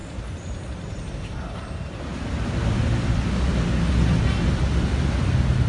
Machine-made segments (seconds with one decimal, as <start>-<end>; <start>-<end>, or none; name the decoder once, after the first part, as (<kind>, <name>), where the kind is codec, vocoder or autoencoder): 0.0-2.1 (vocoder, BigVGAN v2)